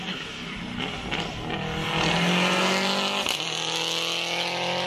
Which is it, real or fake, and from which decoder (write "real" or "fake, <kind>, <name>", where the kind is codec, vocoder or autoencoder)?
real